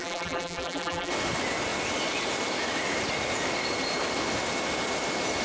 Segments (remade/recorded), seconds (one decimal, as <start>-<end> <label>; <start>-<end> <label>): 0.0-1.1 remade; 1.1-5.4 recorded

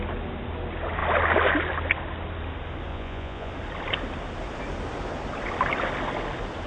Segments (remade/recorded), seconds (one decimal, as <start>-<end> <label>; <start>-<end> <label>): 0.0-2.9 recorded; 2.9-3.5 remade; 3.5-6.7 recorded

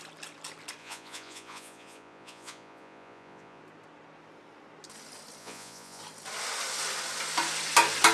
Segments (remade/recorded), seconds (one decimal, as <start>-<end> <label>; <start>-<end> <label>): 0.0-0.8 recorded; 0.8-3.6 remade; 3.6-5.4 recorded; 5.4-6.0 remade; 6.0-8.1 recorded

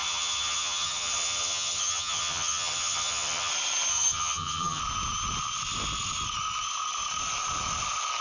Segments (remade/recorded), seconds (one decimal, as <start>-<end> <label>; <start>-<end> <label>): 0.0-3.5 remade; 3.5-3.9 recorded; 3.9-4.8 remade; 4.8-8.2 recorded

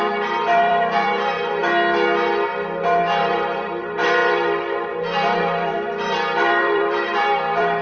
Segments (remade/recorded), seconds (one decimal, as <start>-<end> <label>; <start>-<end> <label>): 0.0-1.6 remade; 1.6-3.2 recorded; 3.2-7.8 remade